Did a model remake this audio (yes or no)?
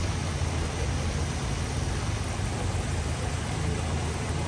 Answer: no